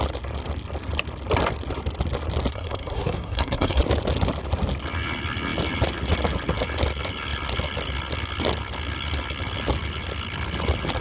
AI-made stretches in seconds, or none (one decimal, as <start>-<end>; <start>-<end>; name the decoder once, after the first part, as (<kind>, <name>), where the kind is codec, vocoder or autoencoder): 2.5-3.8 (codec, SNAC)

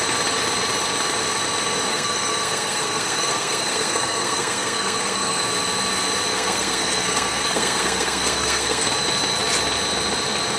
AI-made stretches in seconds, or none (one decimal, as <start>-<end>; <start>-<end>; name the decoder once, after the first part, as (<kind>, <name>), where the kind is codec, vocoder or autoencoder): 1.9-5.4 (codec, SNAC); 6.3-8.9

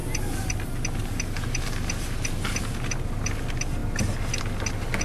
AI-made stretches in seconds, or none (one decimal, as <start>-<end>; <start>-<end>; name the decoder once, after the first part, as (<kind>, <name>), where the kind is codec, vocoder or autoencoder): none